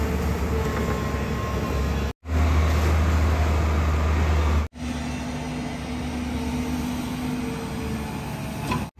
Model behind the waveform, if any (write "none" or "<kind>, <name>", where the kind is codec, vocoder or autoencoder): none